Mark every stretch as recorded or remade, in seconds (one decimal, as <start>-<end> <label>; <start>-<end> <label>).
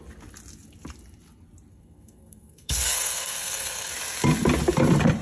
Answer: 0.0-1.7 recorded; 1.7-3.9 remade; 3.9-5.2 recorded